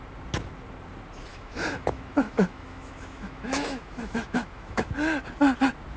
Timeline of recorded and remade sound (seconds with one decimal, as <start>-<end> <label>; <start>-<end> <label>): 0.0-1.3 recorded; 1.3-4.9 remade; 4.9-6.0 recorded